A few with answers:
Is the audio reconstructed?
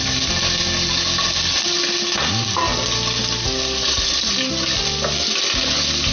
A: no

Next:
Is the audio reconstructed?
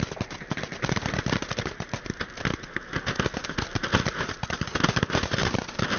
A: no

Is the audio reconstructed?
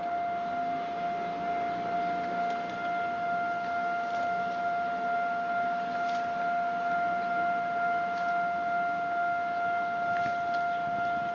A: no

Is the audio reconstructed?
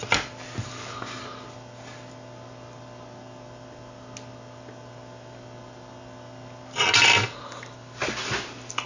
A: no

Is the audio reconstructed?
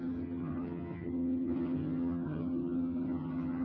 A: yes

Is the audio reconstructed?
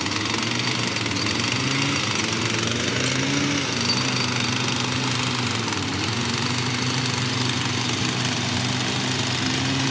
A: no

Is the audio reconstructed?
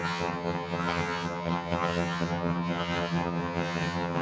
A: yes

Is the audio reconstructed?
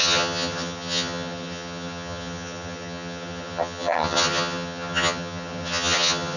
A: yes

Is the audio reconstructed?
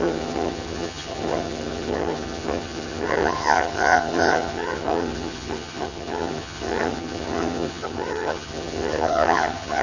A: yes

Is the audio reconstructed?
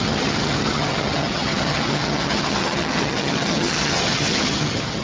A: yes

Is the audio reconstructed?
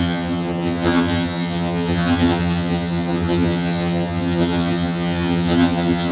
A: yes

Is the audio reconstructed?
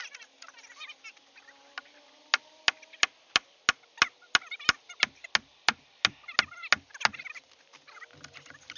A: no